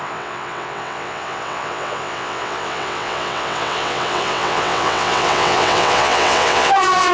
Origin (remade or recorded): remade